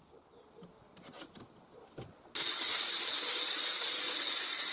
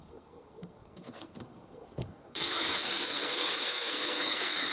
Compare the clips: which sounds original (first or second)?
first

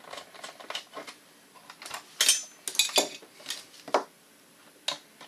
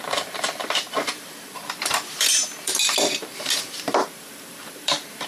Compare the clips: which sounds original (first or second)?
first